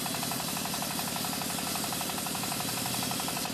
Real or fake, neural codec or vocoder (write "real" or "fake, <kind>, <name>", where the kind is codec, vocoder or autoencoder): real